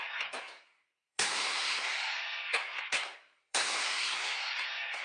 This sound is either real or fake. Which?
fake